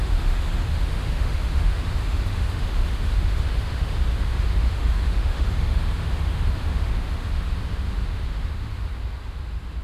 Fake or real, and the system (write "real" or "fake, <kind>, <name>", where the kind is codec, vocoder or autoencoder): fake, autoencoder, DAC-VAE